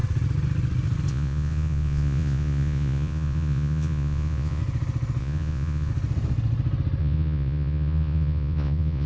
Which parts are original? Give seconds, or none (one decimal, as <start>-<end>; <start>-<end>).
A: 0.0-1.1; 4.6-5.2; 5.9-7.0